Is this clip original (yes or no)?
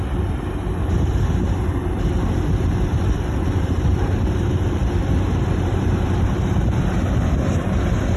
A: no